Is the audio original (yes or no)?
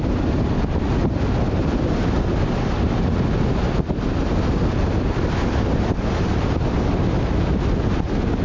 yes